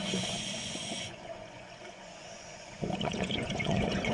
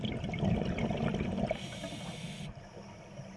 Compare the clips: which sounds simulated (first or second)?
first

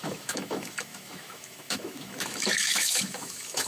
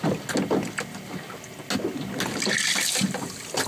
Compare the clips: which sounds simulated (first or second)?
first